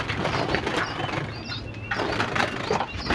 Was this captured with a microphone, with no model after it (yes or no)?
yes